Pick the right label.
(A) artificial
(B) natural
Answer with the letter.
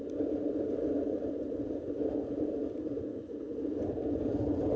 B